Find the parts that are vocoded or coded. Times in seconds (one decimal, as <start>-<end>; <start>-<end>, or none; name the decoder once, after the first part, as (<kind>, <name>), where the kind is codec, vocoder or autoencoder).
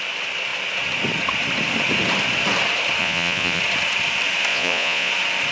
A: 3.0-3.6 (vocoder, Vocos); 4.5-5.1